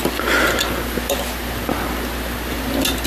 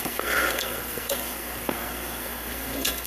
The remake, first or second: second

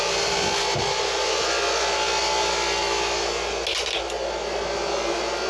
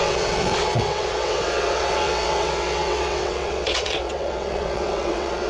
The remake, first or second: second